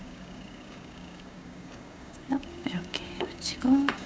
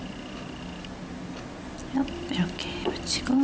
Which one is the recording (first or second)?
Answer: second